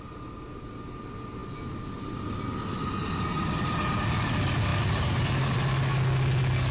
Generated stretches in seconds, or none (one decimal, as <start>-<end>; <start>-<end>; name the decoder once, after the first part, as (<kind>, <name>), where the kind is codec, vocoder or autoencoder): 4.7-5.2 (vocoder, BigVGAN v2)